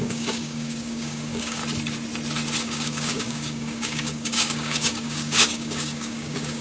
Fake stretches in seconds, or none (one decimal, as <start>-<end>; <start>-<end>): 0.0-1.6; 2.6-6.6